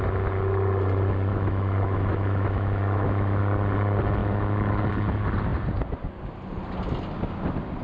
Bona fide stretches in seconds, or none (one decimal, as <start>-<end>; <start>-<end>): 0.0-1.3; 3.4-4.2; 4.9-7.8